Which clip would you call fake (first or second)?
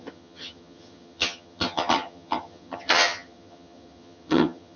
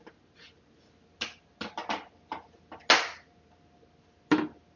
first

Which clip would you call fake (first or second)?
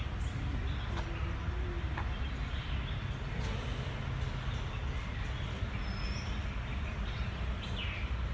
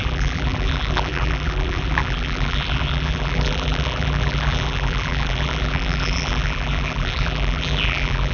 second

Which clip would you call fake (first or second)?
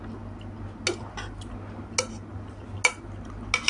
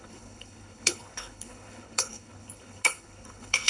second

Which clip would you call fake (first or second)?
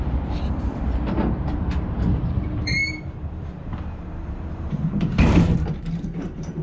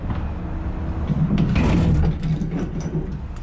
first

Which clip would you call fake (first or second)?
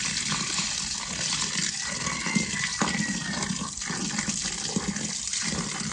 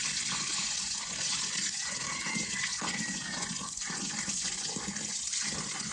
second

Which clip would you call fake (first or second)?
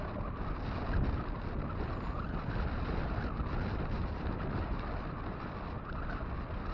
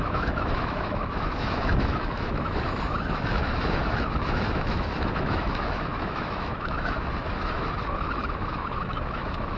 second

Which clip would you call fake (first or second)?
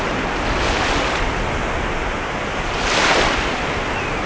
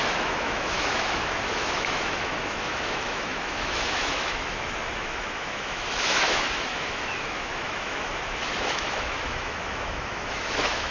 second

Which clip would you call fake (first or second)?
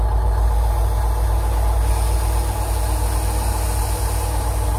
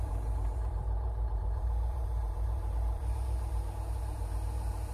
second